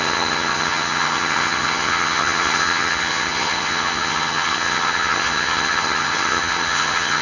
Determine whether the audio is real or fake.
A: fake